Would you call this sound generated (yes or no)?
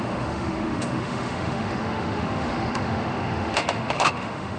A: yes